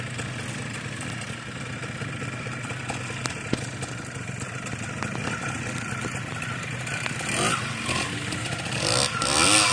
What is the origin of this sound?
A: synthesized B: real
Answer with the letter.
B